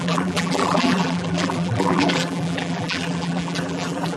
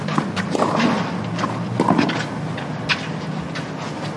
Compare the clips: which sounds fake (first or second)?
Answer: first